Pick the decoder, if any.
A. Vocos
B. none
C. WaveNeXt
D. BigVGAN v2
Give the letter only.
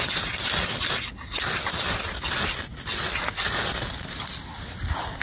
B